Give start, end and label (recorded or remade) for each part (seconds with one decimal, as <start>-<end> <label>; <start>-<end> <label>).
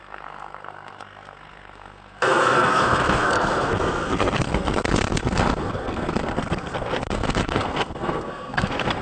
0.0-9.0 remade